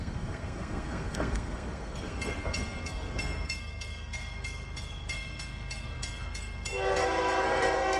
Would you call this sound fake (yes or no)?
yes